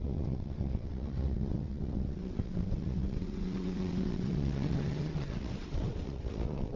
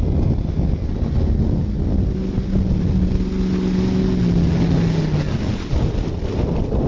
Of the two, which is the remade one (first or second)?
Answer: first